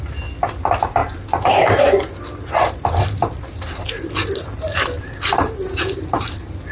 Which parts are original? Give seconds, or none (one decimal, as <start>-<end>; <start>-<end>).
1.0-2.5